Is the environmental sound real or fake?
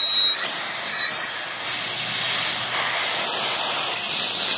real